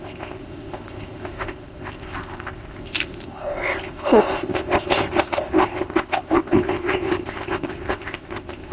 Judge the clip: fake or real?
fake